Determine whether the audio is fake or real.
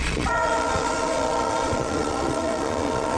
fake